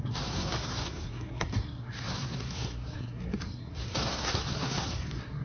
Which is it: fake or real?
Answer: fake